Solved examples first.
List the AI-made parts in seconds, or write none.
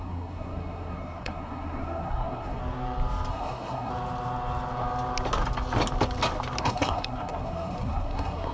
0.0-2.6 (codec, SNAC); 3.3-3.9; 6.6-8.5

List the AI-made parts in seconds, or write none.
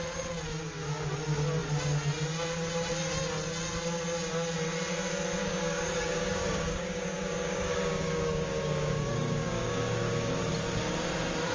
5.4-10.3 (codec, DAC)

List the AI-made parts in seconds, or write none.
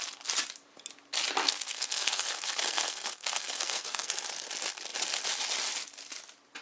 1.4-4.2 (codec, SNAC)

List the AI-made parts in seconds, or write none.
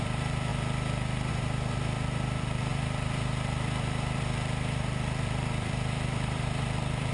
0.0-0.5 (vocoder, BigVGAN v2); 1.3-7.1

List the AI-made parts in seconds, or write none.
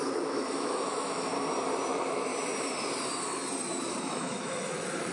0.0-1.3 (autoencoder, DAC-VAE); 1.9-2.3; 4.0-5.1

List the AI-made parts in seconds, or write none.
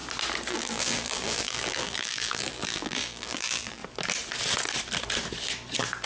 0.5-3.8 (vocoder, BigVGAN v2)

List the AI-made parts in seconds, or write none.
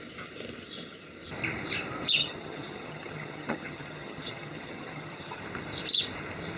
2.2-5.4 (vocoder, HiFi-GAN)